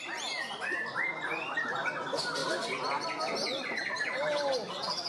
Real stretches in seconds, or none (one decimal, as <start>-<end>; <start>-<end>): 0.0-5.1